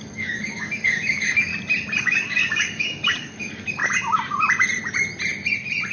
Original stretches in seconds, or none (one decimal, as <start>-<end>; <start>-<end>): 1.5-2.0; 3.8-5.9

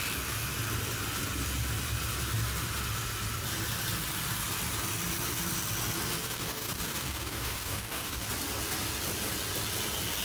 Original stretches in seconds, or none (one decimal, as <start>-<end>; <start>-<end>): 0.0-6.2; 8.3-10.2

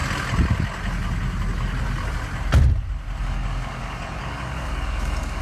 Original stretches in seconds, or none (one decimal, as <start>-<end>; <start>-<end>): 0.0-3.2

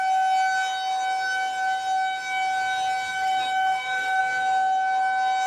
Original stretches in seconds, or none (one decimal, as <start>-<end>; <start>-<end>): 0.0-3.1; 4.2-5.5

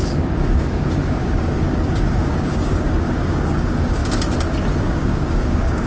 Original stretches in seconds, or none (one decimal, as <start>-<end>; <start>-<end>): 4.0-4.8

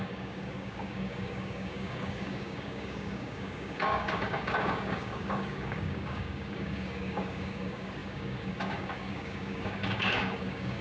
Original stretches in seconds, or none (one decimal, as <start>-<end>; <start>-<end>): none

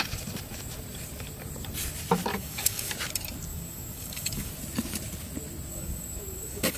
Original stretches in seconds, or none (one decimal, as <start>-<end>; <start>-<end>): 0.0-2.3; 2.9-3.5; 4.5-5.7